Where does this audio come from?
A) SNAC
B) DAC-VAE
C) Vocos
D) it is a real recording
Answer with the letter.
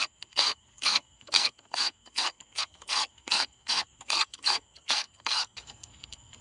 A